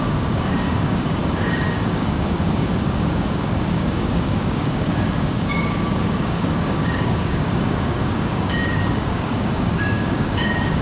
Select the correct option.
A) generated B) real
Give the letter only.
A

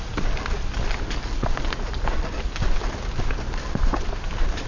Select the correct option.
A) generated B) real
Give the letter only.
B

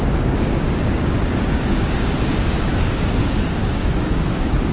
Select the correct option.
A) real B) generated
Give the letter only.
B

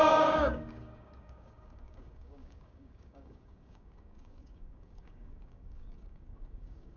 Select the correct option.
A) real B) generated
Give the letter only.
B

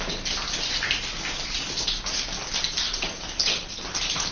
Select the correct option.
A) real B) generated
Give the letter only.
A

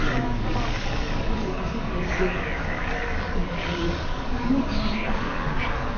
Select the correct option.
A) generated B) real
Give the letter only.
A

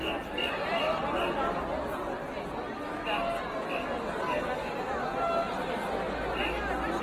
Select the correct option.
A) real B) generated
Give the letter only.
A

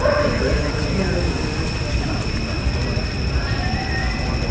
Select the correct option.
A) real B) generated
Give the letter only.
A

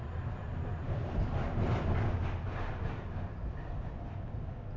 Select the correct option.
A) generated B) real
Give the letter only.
B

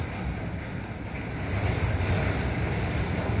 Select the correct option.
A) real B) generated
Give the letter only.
A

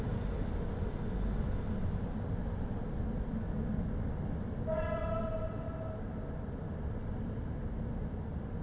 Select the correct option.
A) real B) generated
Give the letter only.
A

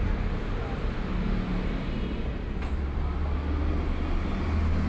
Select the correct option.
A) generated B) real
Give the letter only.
B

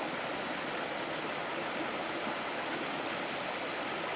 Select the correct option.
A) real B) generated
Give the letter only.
A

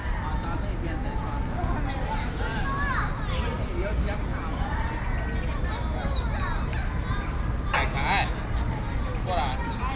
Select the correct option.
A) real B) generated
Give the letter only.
A